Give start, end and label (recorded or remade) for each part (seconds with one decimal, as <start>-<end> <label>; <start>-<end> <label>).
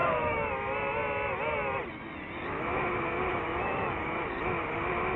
0.0-0.5 remade; 0.5-3.3 recorded; 3.3-4.2 remade; 4.2-5.2 recorded